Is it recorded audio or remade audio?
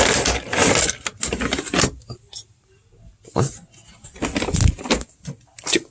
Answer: recorded